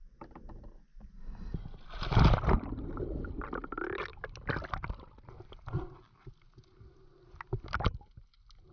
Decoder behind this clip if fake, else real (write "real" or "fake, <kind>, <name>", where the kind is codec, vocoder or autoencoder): real